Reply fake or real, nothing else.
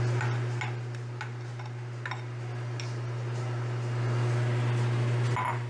real